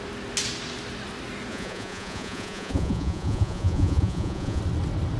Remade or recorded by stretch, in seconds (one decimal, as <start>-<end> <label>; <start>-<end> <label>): 0.0-1.5 recorded; 1.5-4.6 remade; 4.6-5.2 recorded